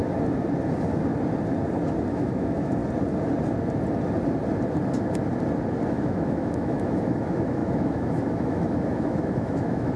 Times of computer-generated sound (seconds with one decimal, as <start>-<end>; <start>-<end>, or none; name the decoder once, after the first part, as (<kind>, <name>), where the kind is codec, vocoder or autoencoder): 2.1-2.8 (autoencoder, DAC-VAE); 5.9-10.0